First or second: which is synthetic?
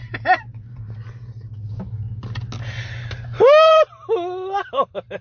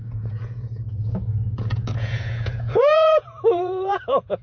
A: second